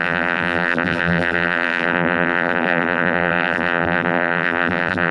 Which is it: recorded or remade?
remade